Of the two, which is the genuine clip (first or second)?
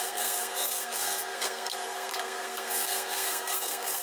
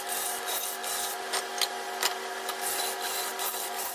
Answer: second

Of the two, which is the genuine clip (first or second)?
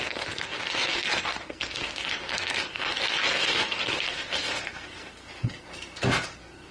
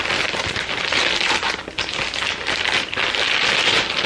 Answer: second